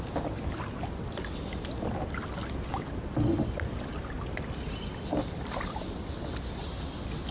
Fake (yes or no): no